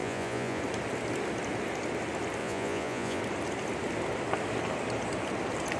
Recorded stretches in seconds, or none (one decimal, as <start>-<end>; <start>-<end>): 0.6-2.4; 3.2-5.8